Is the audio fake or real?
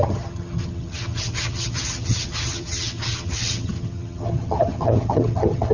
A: fake